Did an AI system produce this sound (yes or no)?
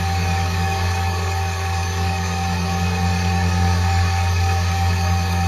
yes